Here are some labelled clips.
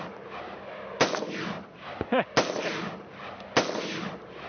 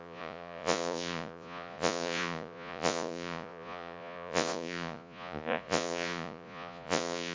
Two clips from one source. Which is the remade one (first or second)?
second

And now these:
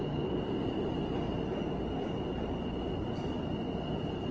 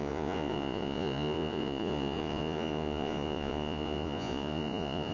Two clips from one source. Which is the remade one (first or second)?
second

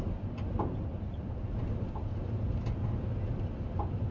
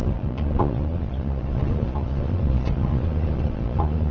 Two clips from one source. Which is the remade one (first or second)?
second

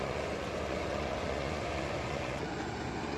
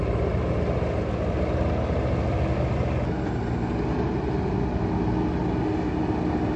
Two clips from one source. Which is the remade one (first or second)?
first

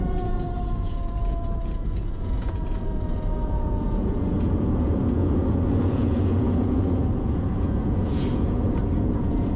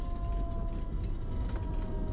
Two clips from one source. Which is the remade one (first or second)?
first